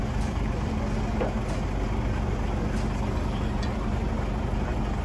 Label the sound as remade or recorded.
recorded